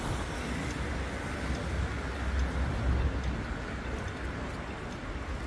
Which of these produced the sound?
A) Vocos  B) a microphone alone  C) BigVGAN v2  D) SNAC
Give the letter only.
B